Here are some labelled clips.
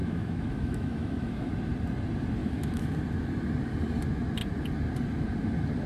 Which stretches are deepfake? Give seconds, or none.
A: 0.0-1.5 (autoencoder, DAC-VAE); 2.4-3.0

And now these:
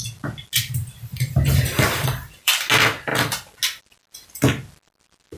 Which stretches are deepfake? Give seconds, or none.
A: 1.1-2.5 (vocoder, BigVGAN v2)

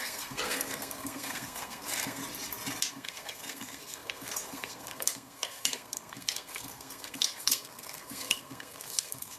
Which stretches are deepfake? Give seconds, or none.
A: 0.0-2.2 (codec, SNAC); 2.9-9.4

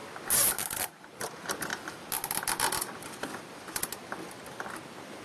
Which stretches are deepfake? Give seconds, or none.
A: none

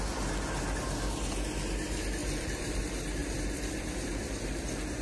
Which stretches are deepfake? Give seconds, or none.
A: 2.2-2.8 (vocoder, BigVGAN v2); 3.2-4.6

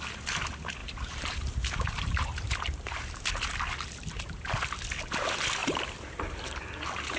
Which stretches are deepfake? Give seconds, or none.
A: 0.8-3.3 (vocoder, BigVGAN v2); 5.6-7.2

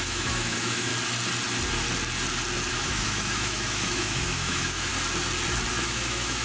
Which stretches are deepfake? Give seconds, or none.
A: 0.0-0.9 (autoencoder, DAC-VAE); 2.7-4.9; 5.7-6.4

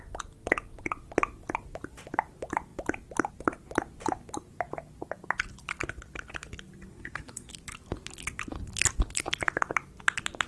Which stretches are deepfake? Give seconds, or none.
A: 6.9-7.5 (codec, SNAC)